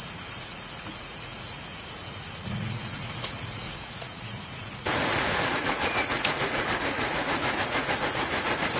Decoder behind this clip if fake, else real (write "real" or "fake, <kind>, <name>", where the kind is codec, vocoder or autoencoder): fake, vocoder, Vocos